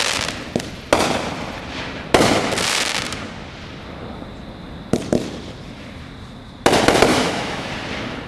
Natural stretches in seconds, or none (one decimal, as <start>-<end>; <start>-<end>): 0.0-7.1; 7.7-8.3